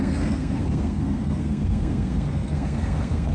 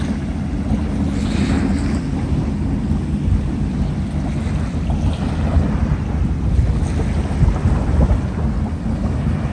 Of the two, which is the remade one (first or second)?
first